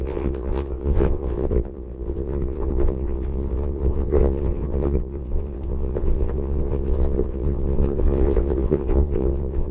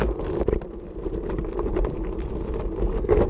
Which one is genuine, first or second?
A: second